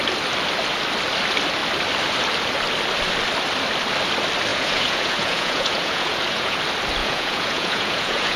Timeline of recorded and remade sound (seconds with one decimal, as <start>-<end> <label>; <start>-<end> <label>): 0.0-4.5 recorded; 4.5-6.6 remade; 6.6-7.0 recorded; 7.0-8.4 remade